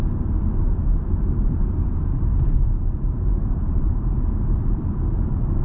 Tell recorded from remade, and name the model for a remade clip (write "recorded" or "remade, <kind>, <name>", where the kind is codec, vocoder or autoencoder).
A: remade, vocoder, BigVGAN v2